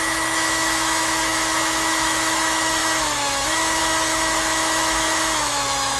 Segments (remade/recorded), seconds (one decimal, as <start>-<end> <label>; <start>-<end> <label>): 0.0-6.0 remade